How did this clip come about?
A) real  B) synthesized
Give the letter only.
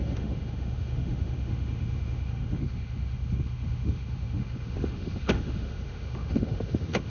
B